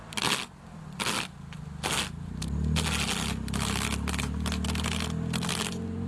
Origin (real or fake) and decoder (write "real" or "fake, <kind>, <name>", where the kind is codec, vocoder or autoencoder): real